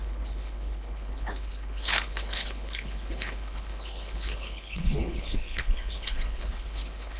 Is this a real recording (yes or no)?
no